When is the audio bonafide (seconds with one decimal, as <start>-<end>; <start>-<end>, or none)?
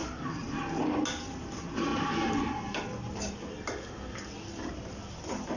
0.0-5.6